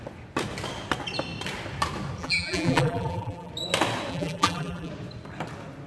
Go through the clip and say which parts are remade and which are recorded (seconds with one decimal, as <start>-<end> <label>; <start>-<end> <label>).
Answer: 0.0-2.2 recorded; 2.2-3.5 remade; 3.5-4.1 recorded; 4.1-4.9 remade; 4.9-5.9 recorded